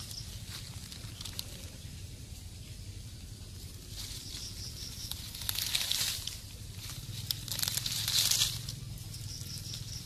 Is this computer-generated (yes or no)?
no